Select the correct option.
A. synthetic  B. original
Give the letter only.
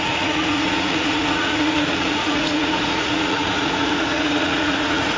A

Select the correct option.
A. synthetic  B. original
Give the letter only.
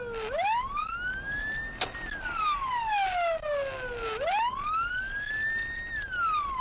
B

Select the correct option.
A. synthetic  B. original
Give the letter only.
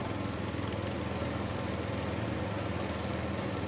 B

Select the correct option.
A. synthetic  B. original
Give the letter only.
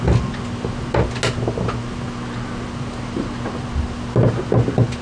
B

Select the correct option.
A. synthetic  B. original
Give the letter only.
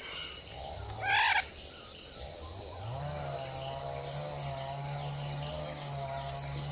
B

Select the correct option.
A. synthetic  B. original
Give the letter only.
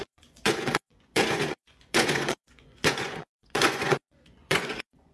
A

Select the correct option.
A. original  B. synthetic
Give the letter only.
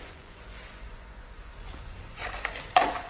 B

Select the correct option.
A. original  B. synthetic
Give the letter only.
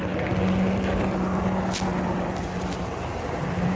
A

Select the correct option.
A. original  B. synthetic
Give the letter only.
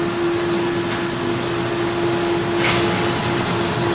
A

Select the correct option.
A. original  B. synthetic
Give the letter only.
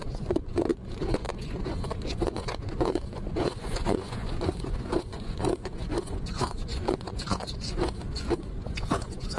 B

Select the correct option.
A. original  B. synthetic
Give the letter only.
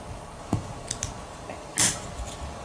A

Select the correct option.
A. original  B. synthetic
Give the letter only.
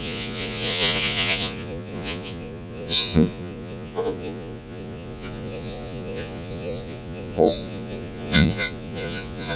B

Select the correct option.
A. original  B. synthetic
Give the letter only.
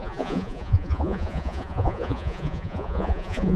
B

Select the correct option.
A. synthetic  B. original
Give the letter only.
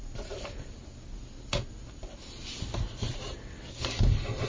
B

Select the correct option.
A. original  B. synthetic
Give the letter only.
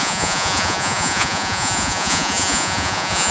B